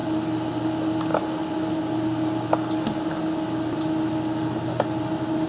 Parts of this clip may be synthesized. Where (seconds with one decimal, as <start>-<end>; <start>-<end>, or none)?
none